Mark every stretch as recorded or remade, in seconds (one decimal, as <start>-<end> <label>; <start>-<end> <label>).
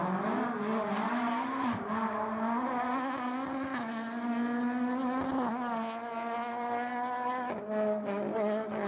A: 0.0-8.9 recorded